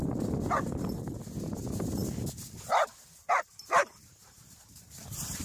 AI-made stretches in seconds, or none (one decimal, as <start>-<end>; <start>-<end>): 4.2-5.4